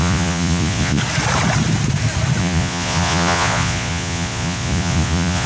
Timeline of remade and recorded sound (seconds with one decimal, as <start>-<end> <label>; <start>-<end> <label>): 0.0-1.0 remade; 1.0-2.4 recorded; 2.4-5.5 remade

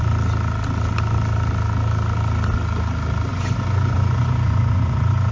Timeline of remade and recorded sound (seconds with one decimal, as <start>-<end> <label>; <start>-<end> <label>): 0.0-3.3 recorded; 3.3-5.3 remade

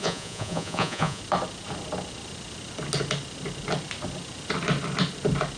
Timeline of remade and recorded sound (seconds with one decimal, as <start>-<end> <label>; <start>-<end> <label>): 0.0-1.2 remade; 1.2-5.6 recorded

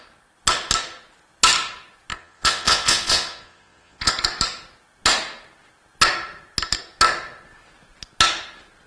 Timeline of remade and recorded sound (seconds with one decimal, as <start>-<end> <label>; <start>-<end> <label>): 0.0-2.1 recorded; 2.1-4.1 remade; 4.1-8.9 recorded

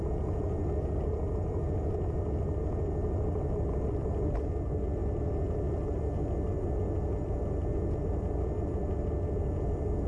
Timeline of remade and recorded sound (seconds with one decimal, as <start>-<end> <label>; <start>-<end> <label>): 0.0-10.1 recorded

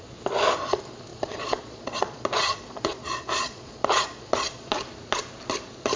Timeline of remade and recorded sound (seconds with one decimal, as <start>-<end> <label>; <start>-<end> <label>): 0.0-1.1 recorded; 1.1-4.7 remade; 4.7-6.0 recorded

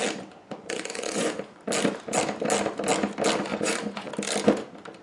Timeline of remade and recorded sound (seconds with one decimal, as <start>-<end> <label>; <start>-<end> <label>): 0.0-0.4 recorded; 0.4-1.6 remade; 1.6-3.5 recorded; 3.5-4.1 remade; 4.1-5.0 recorded